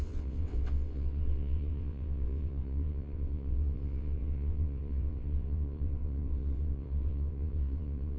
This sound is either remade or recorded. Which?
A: remade